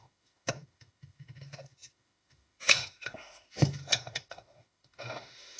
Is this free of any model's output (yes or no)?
no